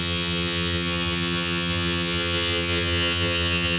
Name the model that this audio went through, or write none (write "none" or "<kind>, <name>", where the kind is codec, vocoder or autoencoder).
vocoder, HiFi-GAN